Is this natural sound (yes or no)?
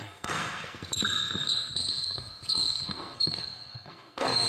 no